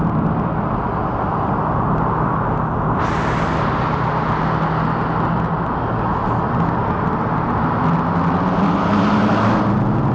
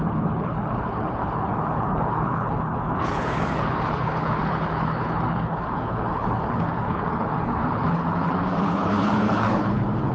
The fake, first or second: second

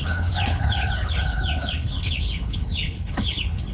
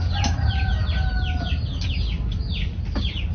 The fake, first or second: first